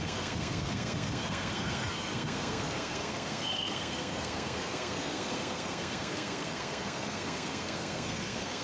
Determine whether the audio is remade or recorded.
remade